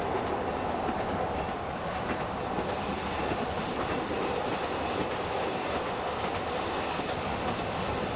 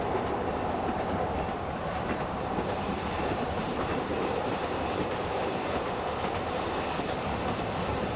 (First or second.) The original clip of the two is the first